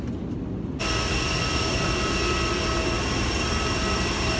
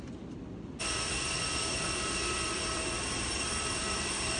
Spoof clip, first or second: second